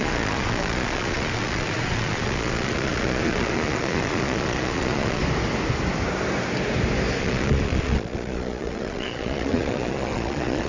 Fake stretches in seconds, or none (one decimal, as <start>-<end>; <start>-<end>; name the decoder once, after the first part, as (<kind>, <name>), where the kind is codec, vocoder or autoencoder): 0.0-5.2 (vocoder, Vocos); 7.2-10.7

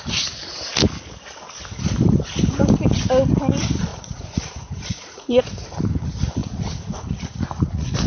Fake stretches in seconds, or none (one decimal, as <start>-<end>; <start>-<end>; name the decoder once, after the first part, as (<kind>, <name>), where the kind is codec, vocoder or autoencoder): 3.9-5.4 (vocoder, Vocos); 6.4-8.1

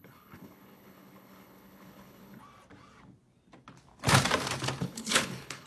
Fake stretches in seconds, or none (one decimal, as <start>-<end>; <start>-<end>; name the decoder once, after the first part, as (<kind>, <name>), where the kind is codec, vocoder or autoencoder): 0.0-2.4 (codec, HILCodec); 4.8-5.7

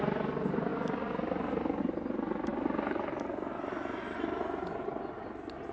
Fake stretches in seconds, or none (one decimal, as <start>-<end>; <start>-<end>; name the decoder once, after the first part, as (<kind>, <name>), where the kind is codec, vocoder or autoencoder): none

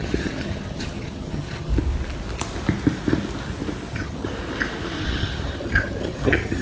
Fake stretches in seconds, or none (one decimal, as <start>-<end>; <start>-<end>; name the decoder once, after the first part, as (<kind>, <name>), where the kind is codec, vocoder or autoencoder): 0.0-1.7 (vocoder, HiFi-GAN); 3.9-4.3; 5.0-6.6

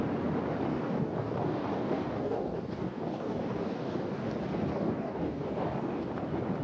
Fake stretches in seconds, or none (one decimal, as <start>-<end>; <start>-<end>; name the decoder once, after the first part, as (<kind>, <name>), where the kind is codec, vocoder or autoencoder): 0.7-4.3 (codec, DAC); 4.7-6.1

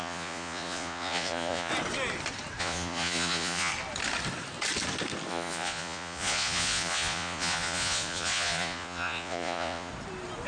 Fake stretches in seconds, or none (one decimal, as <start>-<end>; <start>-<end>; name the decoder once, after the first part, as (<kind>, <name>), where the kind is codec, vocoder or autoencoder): 0.0-1.7 (vocoder, Vocos); 2.6-3.7; 5.3-9.9